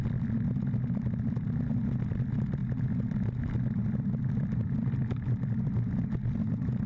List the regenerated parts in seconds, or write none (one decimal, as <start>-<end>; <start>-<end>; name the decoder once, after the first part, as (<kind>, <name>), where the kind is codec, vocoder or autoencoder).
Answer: none